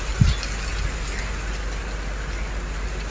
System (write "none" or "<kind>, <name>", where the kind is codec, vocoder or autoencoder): none